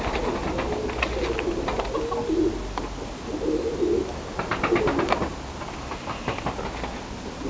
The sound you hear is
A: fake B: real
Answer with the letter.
B